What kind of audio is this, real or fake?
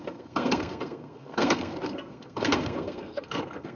fake